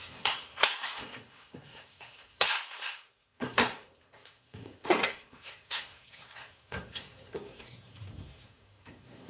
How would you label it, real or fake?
fake